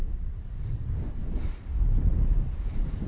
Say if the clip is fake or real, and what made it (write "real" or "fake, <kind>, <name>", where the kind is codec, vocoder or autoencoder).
real